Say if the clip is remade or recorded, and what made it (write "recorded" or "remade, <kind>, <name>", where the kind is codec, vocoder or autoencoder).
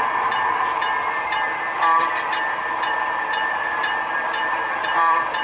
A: remade, vocoder, BigVGAN v2